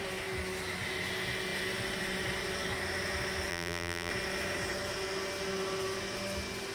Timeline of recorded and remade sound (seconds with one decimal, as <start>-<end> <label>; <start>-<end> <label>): 0.0-3.5 recorded; 3.5-4.1 remade; 4.1-6.7 recorded